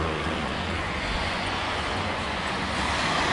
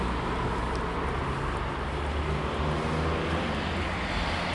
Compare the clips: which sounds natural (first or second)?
second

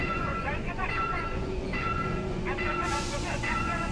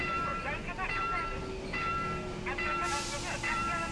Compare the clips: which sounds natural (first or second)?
second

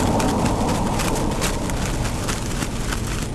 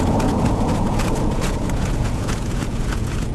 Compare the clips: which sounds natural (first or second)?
first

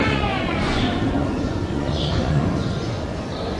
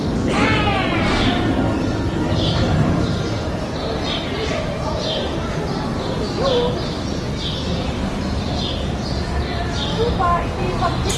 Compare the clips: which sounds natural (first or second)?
second